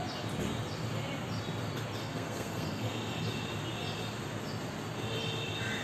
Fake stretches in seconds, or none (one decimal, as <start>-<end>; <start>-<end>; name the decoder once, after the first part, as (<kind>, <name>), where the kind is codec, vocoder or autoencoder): 2.0-3.2 (codec, SNAC)